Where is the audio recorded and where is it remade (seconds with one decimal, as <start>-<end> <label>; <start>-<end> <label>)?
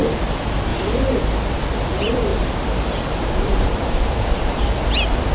0.0-0.7 recorded; 0.7-1.2 remade; 1.2-2.3 recorded; 2.3-4.8 remade; 4.8-5.3 recorded